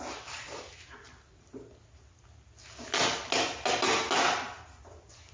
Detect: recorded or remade recorded